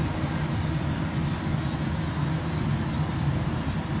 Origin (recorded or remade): recorded